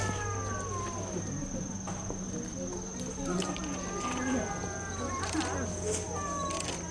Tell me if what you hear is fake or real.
real